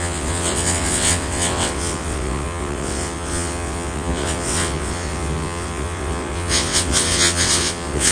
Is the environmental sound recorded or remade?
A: remade